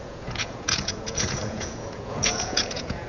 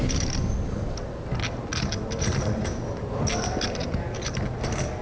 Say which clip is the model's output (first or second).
first